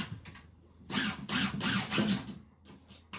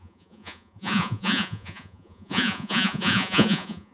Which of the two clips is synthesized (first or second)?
second